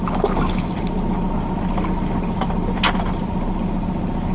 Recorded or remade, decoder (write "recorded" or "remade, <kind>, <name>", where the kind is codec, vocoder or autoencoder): recorded